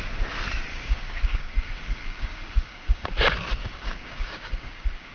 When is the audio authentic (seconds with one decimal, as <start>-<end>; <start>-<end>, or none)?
0.0-0.7; 3.1-3.6